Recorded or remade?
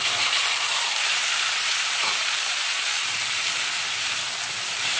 remade